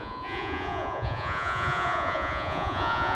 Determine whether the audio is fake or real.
fake